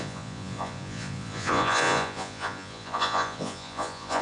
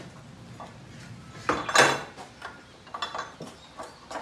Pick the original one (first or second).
second